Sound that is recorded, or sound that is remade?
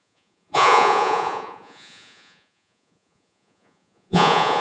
remade